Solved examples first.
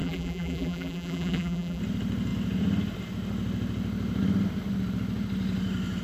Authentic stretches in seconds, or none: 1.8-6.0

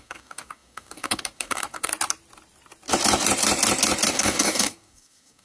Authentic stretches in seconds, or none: 1.9-4.1

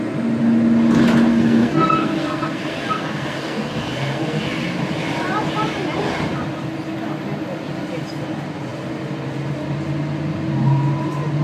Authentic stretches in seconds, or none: 0.0-1.3; 4.4-11.4

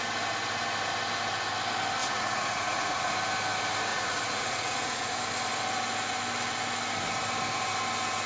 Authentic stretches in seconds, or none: 0.0-2.0; 3.1-3.9; 5.1-8.3

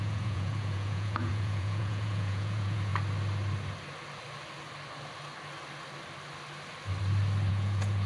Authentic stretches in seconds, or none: 2.9-7.5

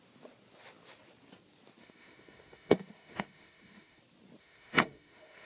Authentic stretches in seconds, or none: 0.0-1.8; 4.0-4.4